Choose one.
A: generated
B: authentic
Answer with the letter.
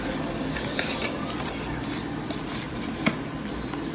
B